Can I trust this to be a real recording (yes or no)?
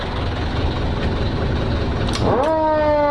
yes